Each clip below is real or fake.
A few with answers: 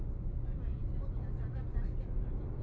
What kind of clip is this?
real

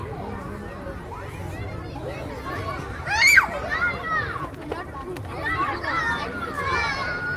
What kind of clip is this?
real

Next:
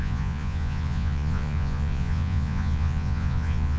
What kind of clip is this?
fake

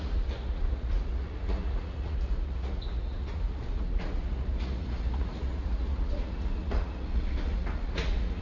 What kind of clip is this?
fake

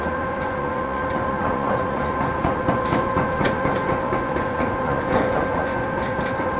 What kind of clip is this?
fake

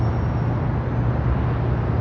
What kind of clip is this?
real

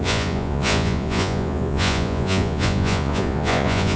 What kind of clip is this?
fake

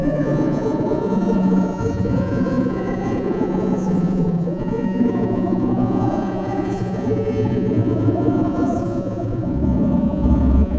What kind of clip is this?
fake